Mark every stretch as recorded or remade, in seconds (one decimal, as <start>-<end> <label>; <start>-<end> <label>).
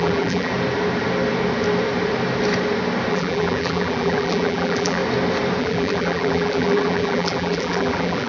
0.0-0.5 remade; 0.5-3.1 recorded; 3.1-5.0 remade; 5.0-5.6 recorded; 5.6-8.3 remade